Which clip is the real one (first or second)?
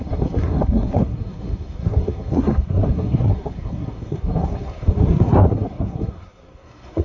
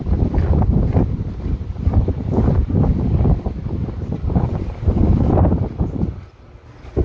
second